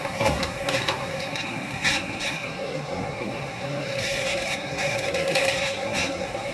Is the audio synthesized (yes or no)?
yes